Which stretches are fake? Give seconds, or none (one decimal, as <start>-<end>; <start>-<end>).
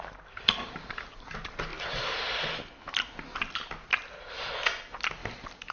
none